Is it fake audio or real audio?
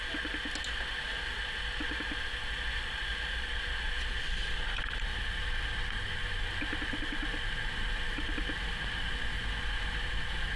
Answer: real